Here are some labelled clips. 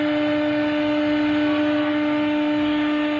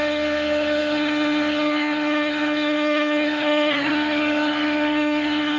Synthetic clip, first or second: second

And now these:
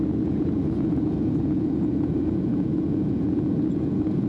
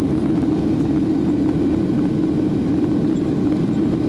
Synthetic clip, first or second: first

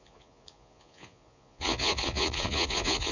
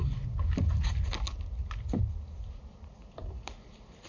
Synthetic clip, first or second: first